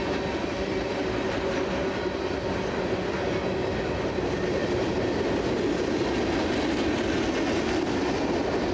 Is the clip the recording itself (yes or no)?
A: yes